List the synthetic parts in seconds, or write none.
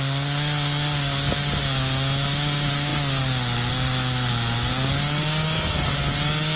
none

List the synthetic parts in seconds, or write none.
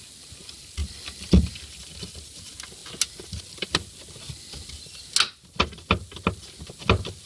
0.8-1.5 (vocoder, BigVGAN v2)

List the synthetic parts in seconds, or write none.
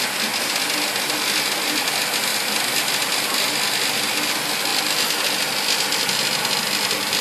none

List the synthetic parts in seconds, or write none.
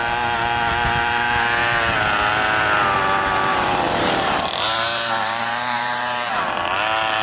3.5-6.4 (vocoder, BigVGAN v2)